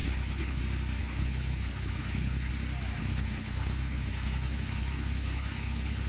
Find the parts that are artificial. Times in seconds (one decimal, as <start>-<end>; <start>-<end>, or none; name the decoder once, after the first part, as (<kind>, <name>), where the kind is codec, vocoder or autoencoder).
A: 0.0-0.6 (codec, HILCodec); 1.0-2.5; 3.0-6.1